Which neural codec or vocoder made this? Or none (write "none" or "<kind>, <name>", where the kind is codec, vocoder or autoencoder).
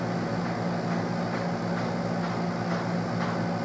none